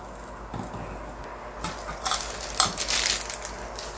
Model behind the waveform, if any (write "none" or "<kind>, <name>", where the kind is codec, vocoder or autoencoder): none